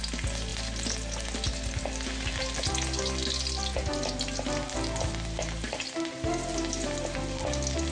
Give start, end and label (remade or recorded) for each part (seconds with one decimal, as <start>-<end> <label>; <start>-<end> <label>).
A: 0.0-7.9 recorded